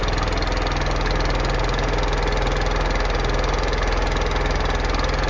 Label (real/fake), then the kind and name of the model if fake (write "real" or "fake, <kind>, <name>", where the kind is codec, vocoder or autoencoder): real